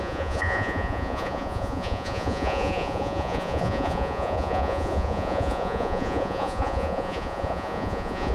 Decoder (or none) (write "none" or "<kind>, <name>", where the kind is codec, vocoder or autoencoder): vocoder, Vocos